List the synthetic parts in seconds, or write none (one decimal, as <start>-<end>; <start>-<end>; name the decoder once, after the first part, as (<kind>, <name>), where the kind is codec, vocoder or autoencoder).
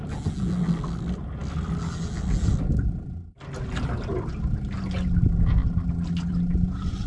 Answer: none